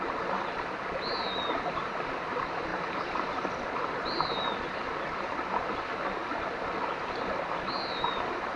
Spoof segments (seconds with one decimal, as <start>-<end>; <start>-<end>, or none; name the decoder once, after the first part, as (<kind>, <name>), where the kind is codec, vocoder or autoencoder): none